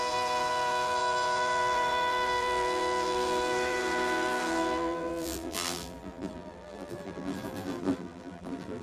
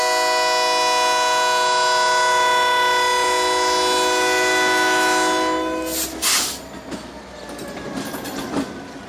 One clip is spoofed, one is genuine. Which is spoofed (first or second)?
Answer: first